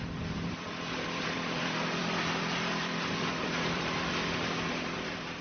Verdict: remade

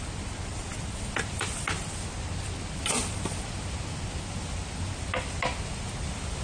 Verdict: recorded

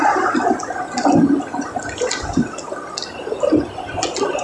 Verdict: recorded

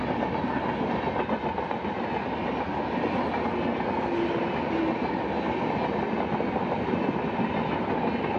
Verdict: recorded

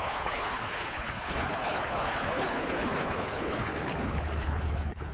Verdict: remade